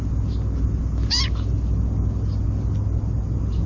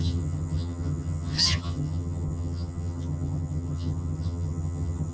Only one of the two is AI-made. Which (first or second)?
second